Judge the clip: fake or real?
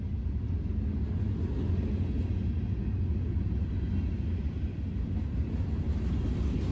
real